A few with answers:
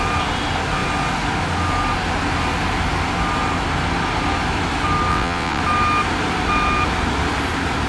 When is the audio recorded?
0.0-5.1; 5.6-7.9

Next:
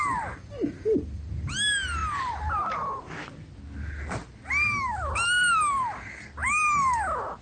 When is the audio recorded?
0.0-7.4

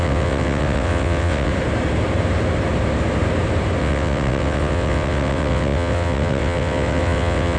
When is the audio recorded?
1.5-3.8

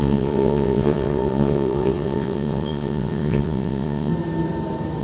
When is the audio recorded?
4.1-5.0

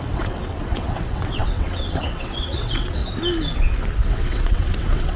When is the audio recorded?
3.0-4.1

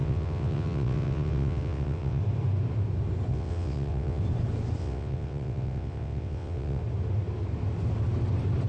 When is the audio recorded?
2.2-3.3; 4.2-4.8; 6.8-8.7